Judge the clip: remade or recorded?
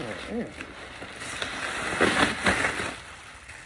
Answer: recorded